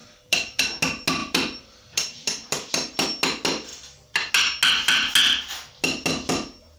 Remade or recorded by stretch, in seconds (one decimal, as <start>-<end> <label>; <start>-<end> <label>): 0.0-0.6 remade; 0.6-1.2 recorded; 1.2-2.7 remade; 2.7-3.7 recorded; 3.7-4.3 remade; 4.3-6.8 recorded